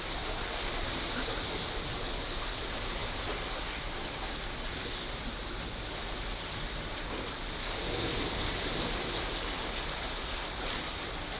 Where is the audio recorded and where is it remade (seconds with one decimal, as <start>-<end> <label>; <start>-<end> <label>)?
0.0-11.4 recorded